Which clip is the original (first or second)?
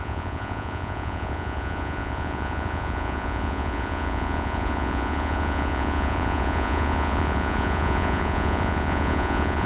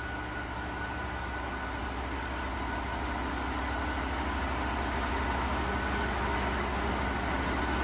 second